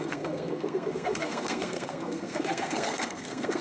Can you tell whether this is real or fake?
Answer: fake